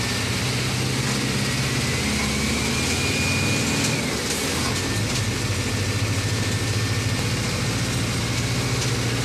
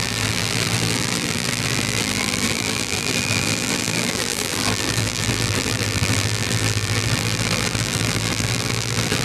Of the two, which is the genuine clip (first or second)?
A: first